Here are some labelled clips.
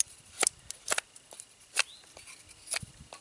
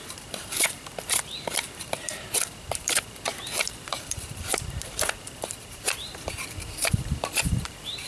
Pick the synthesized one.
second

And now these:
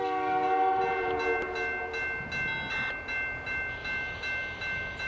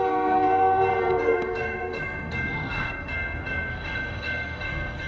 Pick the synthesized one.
second